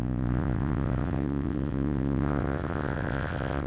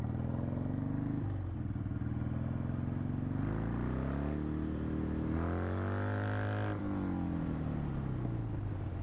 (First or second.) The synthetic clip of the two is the first